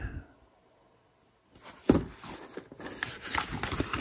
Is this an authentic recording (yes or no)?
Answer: yes